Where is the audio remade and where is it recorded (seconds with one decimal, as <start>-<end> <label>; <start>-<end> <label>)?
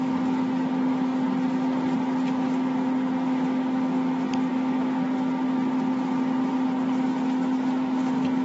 0.0-8.4 recorded